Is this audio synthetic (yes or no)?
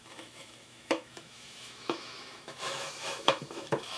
yes